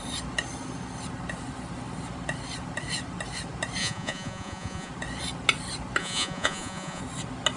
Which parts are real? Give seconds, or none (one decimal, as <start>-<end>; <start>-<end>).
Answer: 0.0-3.8; 4.9-6.0; 7.0-7.6

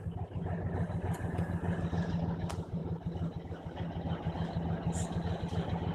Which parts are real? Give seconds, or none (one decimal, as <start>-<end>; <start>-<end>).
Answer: 0.0-5.9

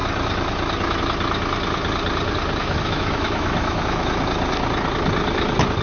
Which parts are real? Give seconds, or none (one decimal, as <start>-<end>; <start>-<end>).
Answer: 0.0-2.6; 4.2-5.8

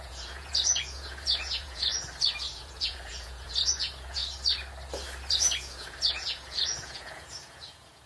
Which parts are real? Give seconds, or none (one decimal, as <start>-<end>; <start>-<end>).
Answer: 1.9-2.5; 4.2-5.3